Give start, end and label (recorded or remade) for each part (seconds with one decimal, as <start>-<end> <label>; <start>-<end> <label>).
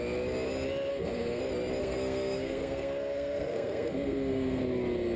0.0-0.9 recorded; 0.9-1.4 remade; 1.4-1.8 recorded; 1.8-4.6 remade; 4.6-5.2 recorded